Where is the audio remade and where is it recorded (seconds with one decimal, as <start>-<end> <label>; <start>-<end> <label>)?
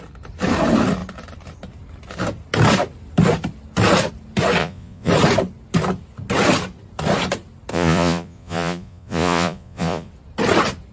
0.0-4.6 recorded; 4.6-5.1 remade; 5.1-7.7 recorded; 7.7-10.1 remade; 10.1-10.9 recorded